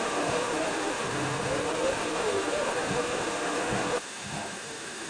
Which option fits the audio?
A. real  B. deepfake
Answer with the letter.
B